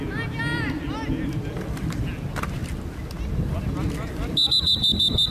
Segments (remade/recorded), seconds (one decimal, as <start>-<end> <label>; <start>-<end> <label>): 0.0-5.3 recorded